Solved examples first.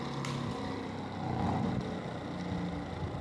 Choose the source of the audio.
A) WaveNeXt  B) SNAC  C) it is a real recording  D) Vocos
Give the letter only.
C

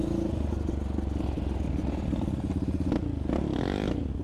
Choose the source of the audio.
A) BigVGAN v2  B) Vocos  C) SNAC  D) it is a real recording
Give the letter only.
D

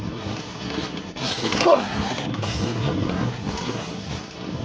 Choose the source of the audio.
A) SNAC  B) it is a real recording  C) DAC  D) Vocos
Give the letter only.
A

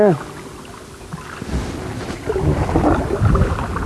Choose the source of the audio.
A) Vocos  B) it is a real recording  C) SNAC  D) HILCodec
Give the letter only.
B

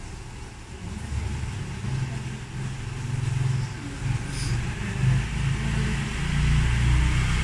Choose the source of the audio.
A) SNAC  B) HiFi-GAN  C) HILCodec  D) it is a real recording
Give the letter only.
D